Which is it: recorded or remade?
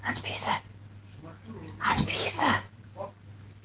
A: recorded